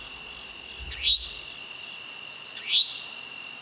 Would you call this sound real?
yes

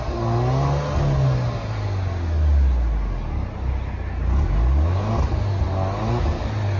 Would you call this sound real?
yes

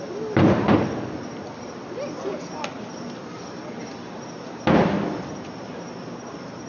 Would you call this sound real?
yes